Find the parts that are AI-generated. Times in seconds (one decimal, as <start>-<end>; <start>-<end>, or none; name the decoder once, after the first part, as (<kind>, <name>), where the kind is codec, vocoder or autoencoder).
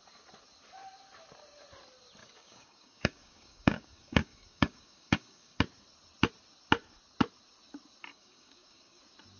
2.2-5.6 (codec, DAC); 8.1-9.0